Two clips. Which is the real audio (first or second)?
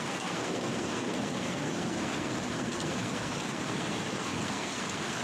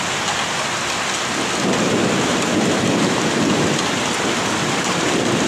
second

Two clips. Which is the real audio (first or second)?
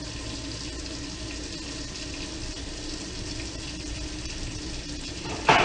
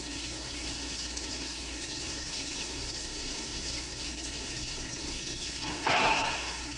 first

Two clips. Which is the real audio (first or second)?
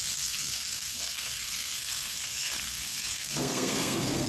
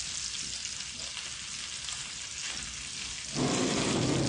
second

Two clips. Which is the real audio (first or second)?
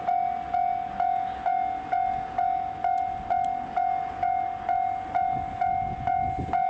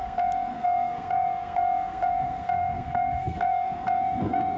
first